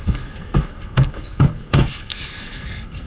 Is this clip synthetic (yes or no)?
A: yes